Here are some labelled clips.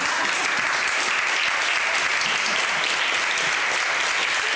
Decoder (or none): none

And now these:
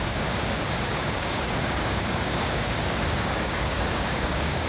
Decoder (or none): codec, DAC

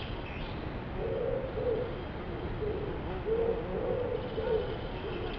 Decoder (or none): none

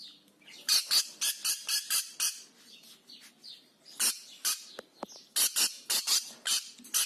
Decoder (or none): none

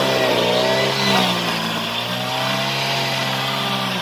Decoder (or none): none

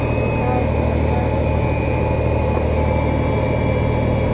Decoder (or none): none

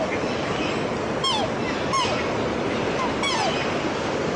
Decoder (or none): none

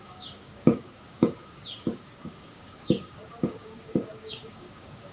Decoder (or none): codec, DAC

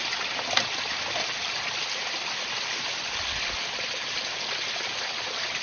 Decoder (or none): none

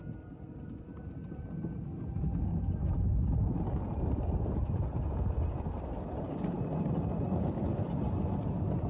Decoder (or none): none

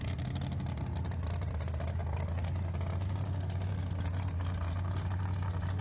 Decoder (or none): none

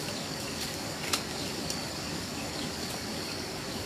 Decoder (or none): codec, DAC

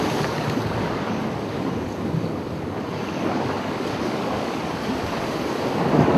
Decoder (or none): codec, DAC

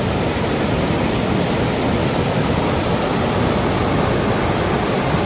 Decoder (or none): none